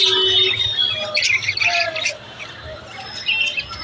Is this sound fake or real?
real